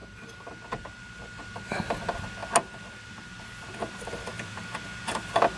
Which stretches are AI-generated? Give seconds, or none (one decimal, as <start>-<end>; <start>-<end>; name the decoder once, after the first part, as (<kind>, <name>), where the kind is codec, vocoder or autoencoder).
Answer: none